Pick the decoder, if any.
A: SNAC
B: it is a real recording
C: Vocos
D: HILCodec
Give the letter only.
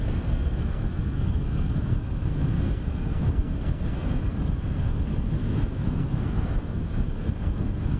A